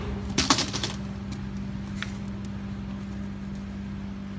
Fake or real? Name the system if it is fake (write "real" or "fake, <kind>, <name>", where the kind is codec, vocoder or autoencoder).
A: real